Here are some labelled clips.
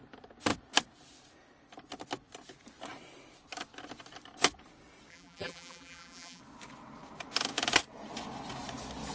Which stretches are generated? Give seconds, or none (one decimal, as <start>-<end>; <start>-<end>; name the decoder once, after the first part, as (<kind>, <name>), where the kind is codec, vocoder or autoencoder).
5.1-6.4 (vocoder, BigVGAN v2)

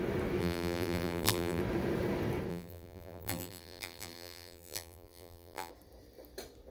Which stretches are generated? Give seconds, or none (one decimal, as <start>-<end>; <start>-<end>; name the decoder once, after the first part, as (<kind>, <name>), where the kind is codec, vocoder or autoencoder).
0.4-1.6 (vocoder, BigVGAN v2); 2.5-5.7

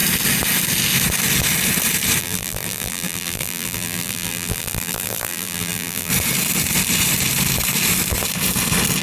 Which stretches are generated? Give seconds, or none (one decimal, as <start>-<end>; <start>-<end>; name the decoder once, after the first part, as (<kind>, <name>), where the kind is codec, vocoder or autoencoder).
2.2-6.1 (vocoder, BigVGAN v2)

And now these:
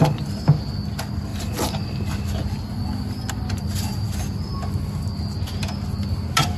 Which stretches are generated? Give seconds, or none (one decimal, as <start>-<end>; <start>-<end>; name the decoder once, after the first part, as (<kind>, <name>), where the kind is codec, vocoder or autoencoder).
none

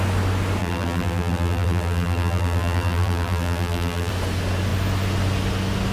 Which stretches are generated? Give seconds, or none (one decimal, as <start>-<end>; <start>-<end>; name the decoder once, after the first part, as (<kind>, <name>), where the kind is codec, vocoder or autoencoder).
0.6-4.1 (vocoder, BigVGAN v2)

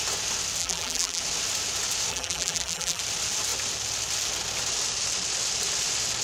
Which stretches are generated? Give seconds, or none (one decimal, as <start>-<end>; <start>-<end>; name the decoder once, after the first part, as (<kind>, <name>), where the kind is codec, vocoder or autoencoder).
0.6-1.2 (vocoder, BigVGAN v2); 2.1-3.0